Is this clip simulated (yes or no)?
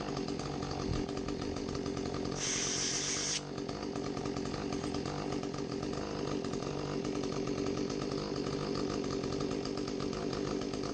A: no